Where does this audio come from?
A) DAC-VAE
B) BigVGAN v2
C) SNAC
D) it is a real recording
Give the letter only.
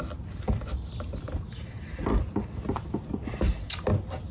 D